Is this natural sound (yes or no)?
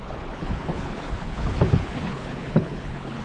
no